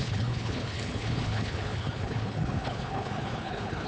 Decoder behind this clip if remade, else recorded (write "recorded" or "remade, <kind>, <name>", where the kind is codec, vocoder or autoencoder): remade, codec, HILCodec